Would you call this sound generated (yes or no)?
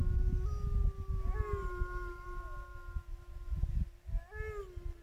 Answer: no